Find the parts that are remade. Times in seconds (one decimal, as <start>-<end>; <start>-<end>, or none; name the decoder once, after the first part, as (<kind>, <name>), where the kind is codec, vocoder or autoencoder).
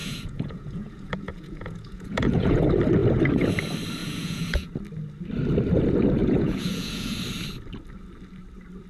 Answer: 0.0-2.6 (vocoder, Vocos); 4.0-4.7; 6.2-7.2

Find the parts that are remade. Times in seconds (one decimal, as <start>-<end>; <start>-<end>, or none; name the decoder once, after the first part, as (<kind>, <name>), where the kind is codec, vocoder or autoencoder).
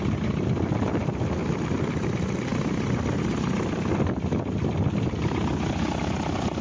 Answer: none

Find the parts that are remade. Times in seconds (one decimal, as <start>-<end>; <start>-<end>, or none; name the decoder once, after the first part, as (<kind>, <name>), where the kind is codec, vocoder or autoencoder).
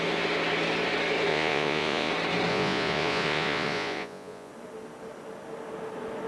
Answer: 1.3-2.1 (vocoder, Vocos); 2.5-4.5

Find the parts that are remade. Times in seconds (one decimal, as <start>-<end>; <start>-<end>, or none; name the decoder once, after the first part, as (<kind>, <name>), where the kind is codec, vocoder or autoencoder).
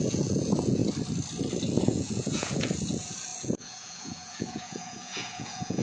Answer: 0.0-0.8 (vocoder, Vocos); 1.8-5.8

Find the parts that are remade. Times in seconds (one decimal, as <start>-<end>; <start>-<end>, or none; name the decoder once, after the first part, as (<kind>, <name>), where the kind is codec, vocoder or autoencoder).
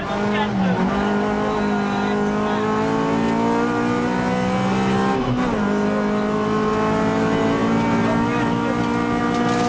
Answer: none